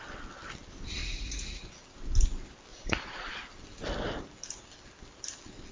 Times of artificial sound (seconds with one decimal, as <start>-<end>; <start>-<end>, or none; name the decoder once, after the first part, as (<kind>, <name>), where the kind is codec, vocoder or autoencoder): 1.0-1.6 (vocoder, Vocos); 2.7-3.3